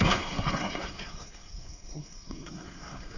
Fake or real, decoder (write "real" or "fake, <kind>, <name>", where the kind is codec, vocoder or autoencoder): fake, codec, SNAC